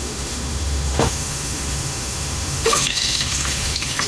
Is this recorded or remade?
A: remade